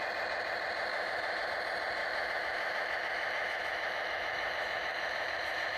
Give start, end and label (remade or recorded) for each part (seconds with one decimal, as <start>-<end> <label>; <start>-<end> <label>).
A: 0.0-0.9 recorded; 0.9-1.5 remade; 1.5-2.0 recorded; 2.0-5.8 remade